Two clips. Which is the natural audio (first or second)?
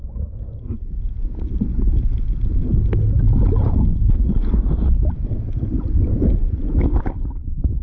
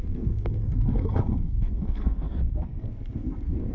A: first